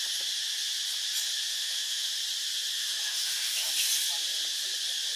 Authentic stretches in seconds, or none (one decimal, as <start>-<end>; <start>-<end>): 0.0-1.5; 2.1-2.7; 3.7-5.2